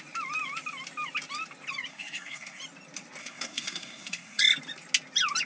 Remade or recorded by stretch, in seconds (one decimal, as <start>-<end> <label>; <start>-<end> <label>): 0.0-1.9 recorded; 1.9-2.6 remade; 2.6-3.2 recorded; 3.2-4.4 remade; 4.4-5.4 recorded